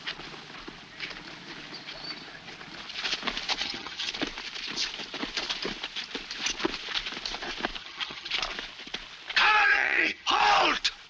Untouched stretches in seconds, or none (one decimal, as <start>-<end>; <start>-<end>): 0.0-3.6; 4.1-7.8; 8.3-9.6; 10.4-11.1